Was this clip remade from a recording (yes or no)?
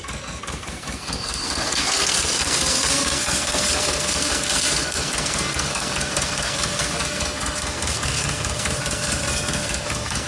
yes